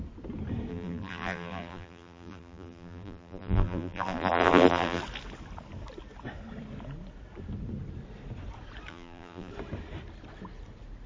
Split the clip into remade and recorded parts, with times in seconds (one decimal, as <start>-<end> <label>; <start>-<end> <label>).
0.0-0.7 recorded; 0.7-5.0 remade; 5.0-8.9 recorded; 8.9-9.5 remade; 9.5-11.1 recorded